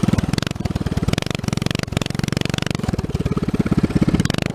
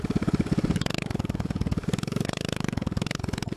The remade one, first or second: second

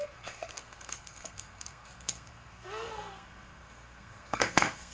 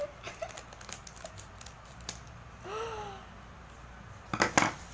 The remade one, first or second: first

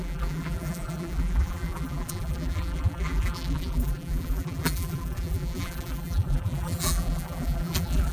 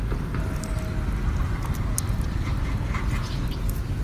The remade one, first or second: first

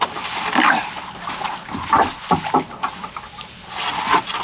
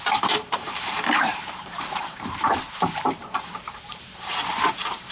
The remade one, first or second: second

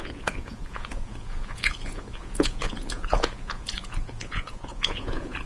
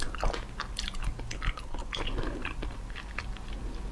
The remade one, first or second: first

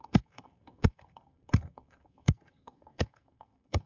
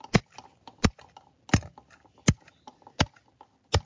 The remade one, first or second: first